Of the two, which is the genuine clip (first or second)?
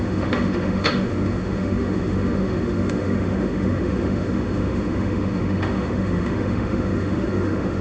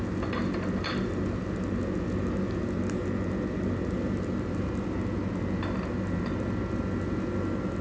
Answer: second